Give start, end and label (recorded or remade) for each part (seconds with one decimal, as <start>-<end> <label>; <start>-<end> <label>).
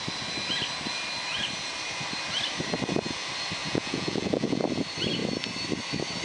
0.0-3.6 recorded; 3.6-4.6 remade; 4.6-6.2 recorded